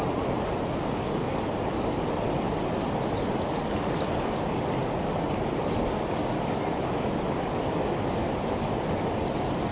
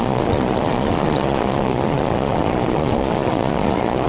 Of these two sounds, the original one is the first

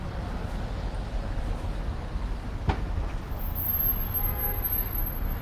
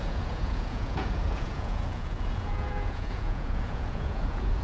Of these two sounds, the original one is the first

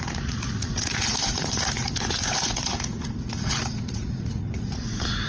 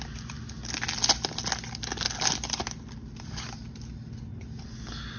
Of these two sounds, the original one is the second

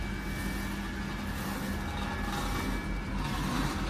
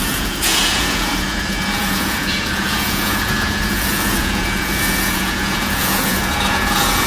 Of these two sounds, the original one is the first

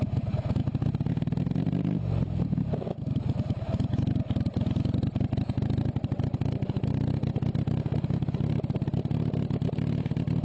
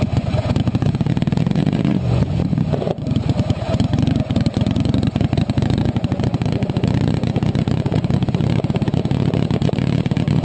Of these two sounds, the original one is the first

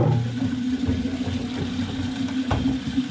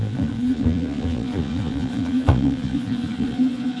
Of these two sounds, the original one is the first